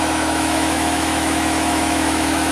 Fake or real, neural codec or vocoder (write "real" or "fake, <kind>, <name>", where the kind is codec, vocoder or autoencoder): fake, autoencoder, DAC-VAE